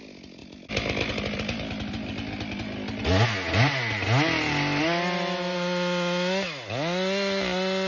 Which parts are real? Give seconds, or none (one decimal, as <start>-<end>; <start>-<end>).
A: 0.0-7.9